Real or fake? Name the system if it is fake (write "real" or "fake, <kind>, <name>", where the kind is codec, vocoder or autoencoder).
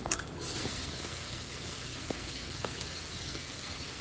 fake, codec, SNAC